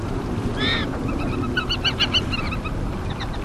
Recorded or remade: recorded